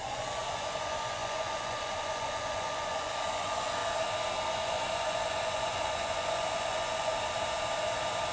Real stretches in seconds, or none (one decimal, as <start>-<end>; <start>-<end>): 3.8-4.5; 7.1-8.3